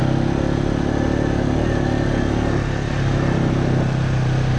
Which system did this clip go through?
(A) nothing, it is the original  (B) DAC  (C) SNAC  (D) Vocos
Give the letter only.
A